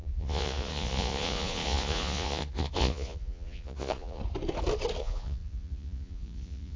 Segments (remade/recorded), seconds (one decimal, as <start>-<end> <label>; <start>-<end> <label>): 0.0-4.2 remade; 4.2-5.0 recorded; 5.0-6.8 remade